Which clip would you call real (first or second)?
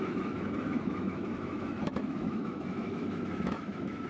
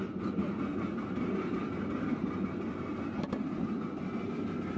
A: second